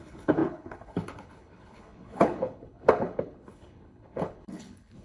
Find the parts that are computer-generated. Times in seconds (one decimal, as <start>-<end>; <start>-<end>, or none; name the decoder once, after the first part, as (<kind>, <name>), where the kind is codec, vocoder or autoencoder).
0.0-5.0 (codec, HILCodec)